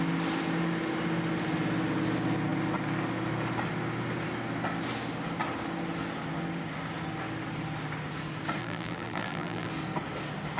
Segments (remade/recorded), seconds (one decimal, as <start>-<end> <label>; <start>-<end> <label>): 0.0-8.6 recorded; 8.6-9.7 remade; 9.7-10.6 recorded